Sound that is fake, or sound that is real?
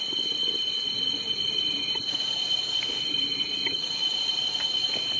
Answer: real